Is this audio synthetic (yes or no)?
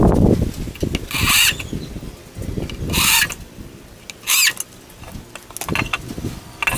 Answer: no